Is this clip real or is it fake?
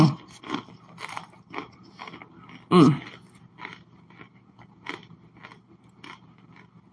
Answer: real